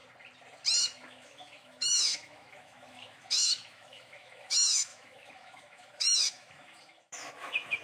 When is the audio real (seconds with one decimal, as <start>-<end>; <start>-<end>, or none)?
0.0-0.8